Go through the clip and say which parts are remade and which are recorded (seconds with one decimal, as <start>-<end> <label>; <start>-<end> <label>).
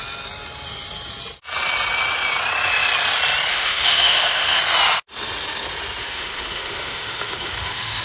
0.0-3.5 recorded; 3.5-4.6 remade; 4.6-6.0 recorded; 6.0-8.0 remade